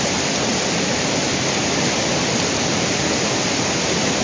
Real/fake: real